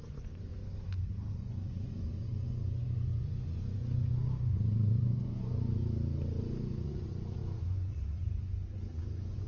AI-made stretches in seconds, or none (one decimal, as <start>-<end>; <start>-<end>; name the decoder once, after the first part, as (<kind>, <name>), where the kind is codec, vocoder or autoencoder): 0.0-0.5 (vocoder, Vocos); 1.3-5.8; 6.4-9.5